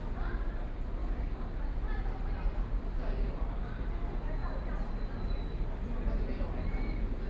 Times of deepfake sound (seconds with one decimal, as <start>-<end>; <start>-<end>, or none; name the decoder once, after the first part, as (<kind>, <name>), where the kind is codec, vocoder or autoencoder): 1.0-1.6 (codec, DAC); 3.0-3.8